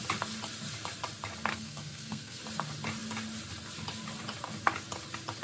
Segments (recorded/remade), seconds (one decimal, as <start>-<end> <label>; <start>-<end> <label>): 0.0-1.5 recorded; 1.5-2.4 remade; 2.4-5.4 recorded